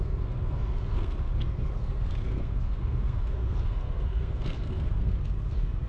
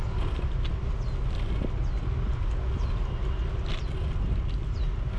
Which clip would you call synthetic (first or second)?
first